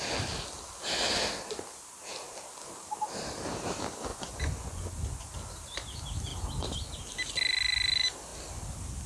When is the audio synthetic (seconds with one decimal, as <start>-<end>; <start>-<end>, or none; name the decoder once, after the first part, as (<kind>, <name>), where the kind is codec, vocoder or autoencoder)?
4.1-5.3 (vocoder, Vocos)